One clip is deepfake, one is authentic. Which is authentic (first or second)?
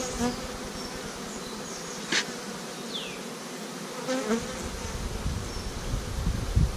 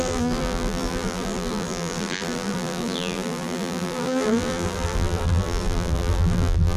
first